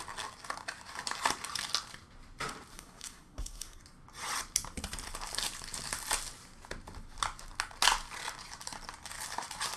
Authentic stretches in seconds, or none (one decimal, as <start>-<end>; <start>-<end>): 0.0-2.7; 3.8-9.8